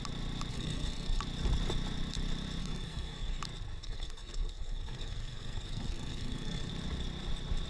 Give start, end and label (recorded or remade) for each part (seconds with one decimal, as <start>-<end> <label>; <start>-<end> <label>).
0.0-0.5 recorded; 0.5-1.2 remade; 1.2-2.6 recorded; 2.6-3.4 remade; 3.4-3.8 recorded; 3.8-6.7 remade; 6.7-7.7 recorded